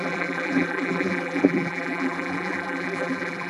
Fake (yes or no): yes